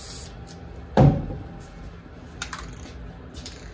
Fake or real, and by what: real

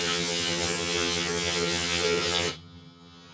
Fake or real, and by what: fake, vocoder, HiFi-GAN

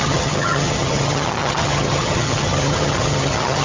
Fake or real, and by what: fake, vocoder, HiFi-GAN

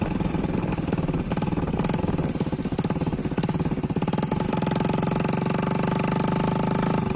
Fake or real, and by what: real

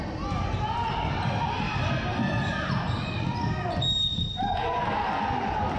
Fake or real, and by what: real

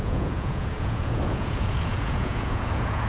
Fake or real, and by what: fake, vocoder, Vocos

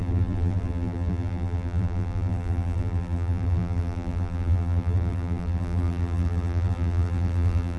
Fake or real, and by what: fake, vocoder, BigVGAN v2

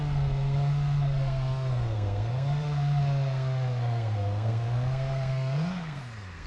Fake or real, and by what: fake, codec, SNAC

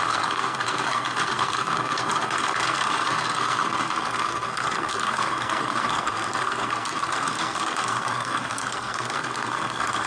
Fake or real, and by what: fake, codec, SNAC